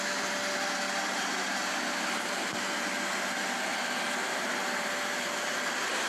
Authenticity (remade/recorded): recorded